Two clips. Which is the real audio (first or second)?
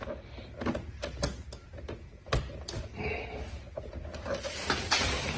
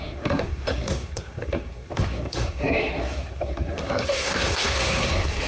first